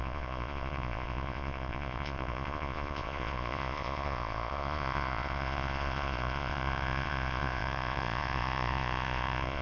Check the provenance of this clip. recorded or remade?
remade